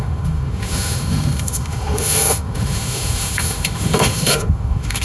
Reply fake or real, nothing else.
fake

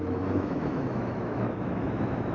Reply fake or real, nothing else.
fake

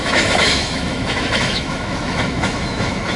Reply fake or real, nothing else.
fake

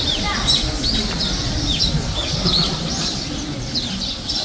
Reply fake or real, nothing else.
real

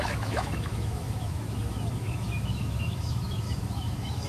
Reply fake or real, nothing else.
fake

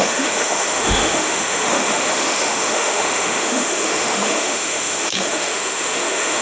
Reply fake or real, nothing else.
fake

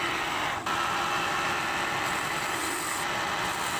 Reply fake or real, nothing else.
real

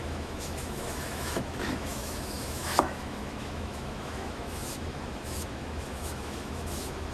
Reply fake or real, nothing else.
fake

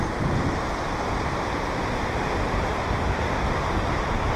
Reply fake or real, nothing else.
real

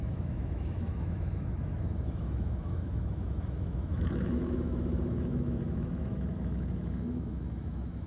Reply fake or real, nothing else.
fake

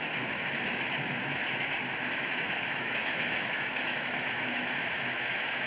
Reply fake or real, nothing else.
fake